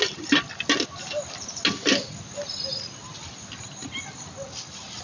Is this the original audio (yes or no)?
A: yes